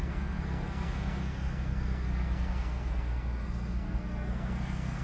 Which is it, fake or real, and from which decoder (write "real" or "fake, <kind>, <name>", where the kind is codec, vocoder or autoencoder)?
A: fake, codec, SNAC